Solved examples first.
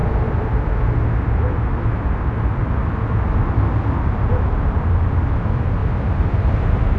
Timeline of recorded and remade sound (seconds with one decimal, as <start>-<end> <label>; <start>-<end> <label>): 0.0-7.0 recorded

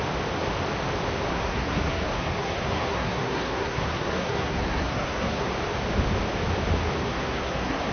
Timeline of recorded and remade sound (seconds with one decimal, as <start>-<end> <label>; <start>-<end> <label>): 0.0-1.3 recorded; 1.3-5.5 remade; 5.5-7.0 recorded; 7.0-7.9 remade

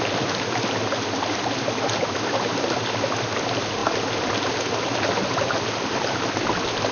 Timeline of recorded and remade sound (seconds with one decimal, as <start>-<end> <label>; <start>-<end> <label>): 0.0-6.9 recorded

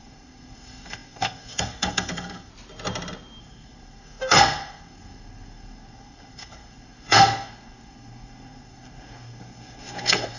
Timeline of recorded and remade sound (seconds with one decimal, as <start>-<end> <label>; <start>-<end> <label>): 0.0-2.5 remade; 2.5-3.4 recorded; 3.4-10.4 remade

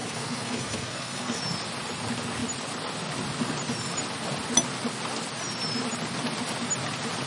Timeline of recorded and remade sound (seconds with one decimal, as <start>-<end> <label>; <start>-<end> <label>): 0.0-1.4 remade; 1.4-7.3 recorded

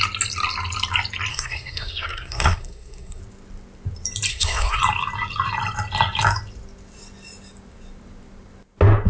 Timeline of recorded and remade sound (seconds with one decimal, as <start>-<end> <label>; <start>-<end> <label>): 0.0-1.3 recorded; 1.3-3.2 remade; 3.2-4.3 recorded; 4.3-4.8 remade; 4.8-9.1 recorded

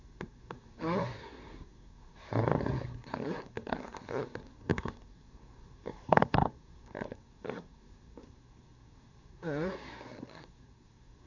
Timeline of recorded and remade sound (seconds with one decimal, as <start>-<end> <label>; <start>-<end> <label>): 0.0-11.3 remade

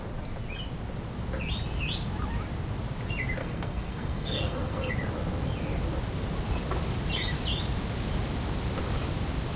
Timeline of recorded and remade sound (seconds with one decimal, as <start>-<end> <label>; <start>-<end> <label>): 0.0-3.4 recorded; 3.4-4.9 remade; 4.9-9.6 recorded